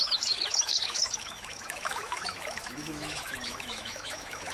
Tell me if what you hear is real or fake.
fake